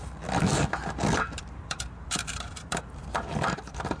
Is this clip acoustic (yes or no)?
no